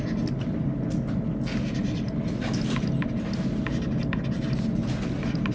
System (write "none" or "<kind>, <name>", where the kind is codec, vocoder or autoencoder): none